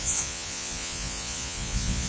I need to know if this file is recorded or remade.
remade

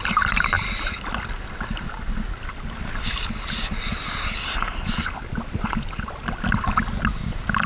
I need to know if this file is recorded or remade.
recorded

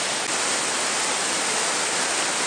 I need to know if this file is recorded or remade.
recorded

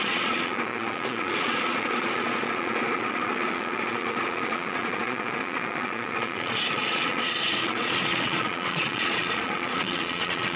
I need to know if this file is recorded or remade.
remade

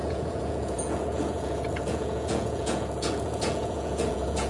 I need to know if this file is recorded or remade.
remade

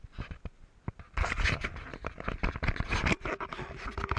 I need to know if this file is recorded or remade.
recorded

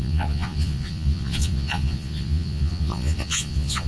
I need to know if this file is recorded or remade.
remade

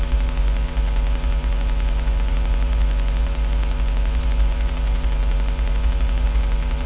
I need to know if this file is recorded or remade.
remade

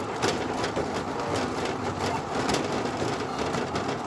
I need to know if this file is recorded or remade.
recorded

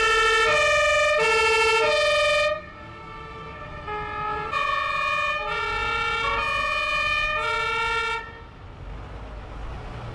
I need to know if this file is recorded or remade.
recorded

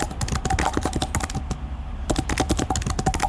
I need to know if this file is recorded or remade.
recorded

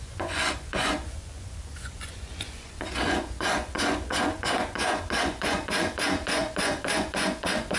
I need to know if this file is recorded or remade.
remade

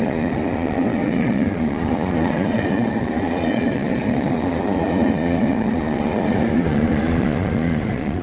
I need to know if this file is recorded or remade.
remade